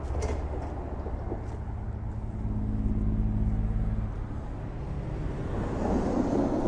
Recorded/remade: recorded